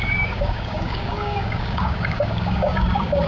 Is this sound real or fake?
fake